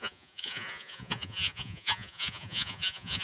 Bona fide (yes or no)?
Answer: no